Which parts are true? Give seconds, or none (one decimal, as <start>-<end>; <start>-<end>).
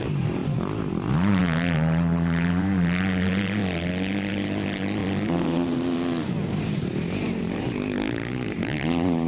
3.6-4.3; 5.0-6.6